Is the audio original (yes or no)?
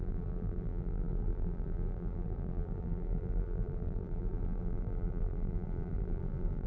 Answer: no